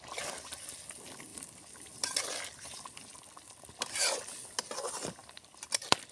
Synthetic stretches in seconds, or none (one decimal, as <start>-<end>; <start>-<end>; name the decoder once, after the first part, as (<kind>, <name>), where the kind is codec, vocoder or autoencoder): 1.3-2.3 (vocoder, BigVGAN v2); 5.2-6.1